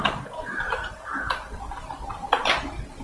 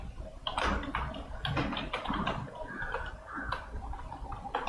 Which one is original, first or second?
first